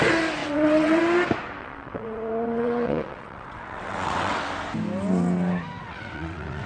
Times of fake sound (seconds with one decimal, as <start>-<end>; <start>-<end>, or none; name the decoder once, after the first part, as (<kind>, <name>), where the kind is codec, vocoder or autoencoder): 0.4-1.0 (vocoder, WaveNeXt); 1.6-4.4; 5.8-6.7